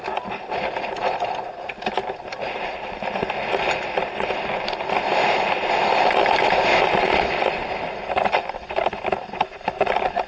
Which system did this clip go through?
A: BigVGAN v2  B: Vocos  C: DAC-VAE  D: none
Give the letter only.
D